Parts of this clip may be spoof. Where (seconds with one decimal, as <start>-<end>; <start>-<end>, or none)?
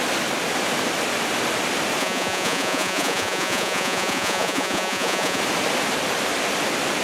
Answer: 2.0-5.4